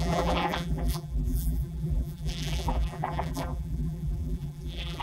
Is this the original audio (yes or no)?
no